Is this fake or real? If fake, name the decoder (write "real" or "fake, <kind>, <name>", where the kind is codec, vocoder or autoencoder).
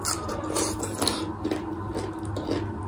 real